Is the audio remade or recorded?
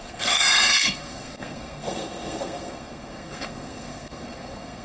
remade